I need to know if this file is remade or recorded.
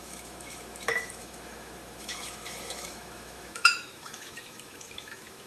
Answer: remade